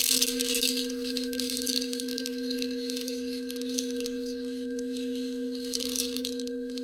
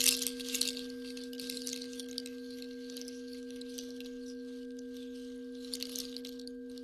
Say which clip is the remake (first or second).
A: first